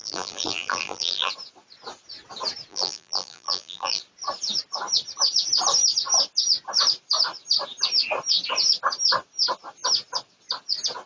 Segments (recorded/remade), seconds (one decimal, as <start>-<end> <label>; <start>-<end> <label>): 0.0-1.3 remade; 1.3-2.7 recorded; 2.7-4.0 remade; 4.0-11.1 recorded